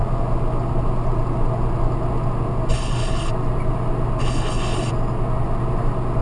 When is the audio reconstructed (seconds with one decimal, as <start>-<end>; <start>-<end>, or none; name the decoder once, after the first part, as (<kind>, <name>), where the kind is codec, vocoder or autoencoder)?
2.7-3.3 (codec, HILCodec); 4.2-4.9